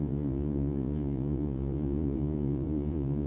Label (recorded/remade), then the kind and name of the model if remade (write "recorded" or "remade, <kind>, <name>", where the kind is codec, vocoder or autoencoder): remade, vocoder, Vocos